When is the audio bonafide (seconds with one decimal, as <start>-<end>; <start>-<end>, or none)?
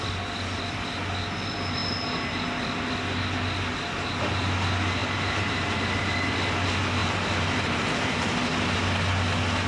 0.0-5.0; 5.5-7.0; 8.1-9.7